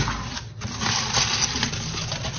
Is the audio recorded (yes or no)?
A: yes